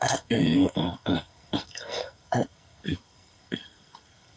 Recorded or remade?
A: remade